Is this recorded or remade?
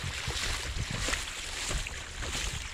recorded